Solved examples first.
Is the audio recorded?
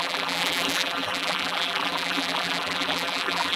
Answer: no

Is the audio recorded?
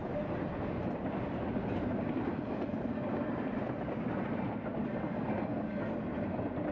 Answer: no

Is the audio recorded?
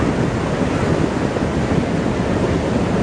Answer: yes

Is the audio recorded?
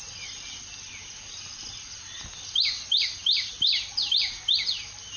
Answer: yes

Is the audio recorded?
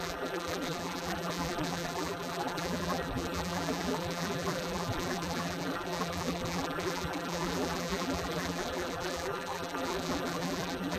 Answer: no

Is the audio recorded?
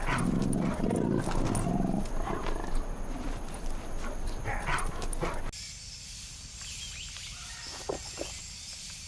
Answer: yes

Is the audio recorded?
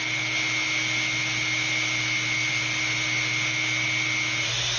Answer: yes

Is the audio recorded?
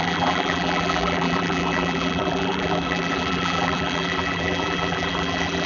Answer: no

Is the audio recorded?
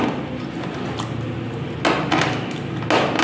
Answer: yes